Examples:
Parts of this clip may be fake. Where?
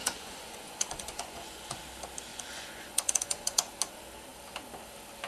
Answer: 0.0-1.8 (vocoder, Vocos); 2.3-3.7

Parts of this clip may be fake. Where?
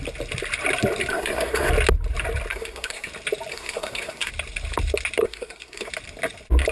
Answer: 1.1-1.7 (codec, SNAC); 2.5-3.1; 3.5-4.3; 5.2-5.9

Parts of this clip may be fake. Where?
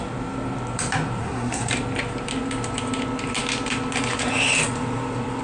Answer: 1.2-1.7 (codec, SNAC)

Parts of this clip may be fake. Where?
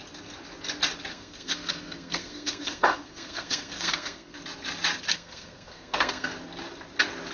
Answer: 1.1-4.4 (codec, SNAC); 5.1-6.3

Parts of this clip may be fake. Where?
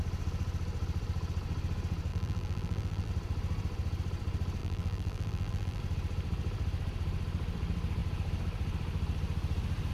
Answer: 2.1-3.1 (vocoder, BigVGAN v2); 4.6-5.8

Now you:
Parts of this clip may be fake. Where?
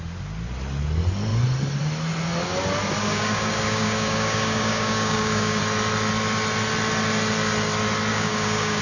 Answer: 3.1-5.6 (codec, DAC); 8.1-8.8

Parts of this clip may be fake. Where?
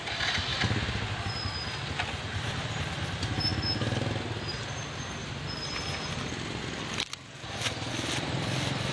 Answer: none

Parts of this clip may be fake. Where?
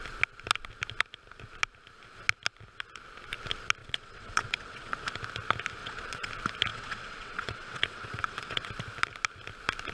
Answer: 3.8-5.1 (vocoder, WaveNeXt); 5.8-6.3; 6.7-8.7